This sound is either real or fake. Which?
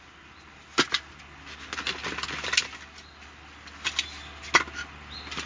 real